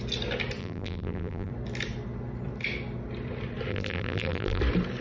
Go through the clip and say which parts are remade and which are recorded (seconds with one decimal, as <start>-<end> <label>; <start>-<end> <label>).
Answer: 0.0-0.6 recorded; 0.6-1.5 remade; 1.5-3.7 recorded; 3.7-4.6 remade; 4.6-5.0 recorded